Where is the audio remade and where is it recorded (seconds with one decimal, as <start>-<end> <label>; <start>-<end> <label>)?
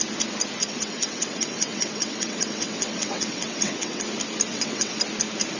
0.0-0.6 recorded; 0.6-4.0 remade; 4.0-4.5 recorded; 4.5-5.0 remade; 5.0-5.6 recorded